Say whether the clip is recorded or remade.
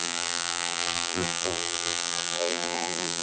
remade